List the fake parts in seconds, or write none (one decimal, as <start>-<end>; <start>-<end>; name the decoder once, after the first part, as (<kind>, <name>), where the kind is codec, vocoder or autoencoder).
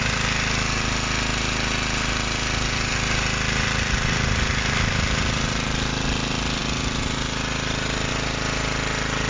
none